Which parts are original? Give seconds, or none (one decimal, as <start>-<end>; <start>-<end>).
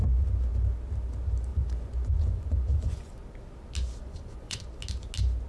0.0-1.5; 3.1-4.0; 4.6-5.5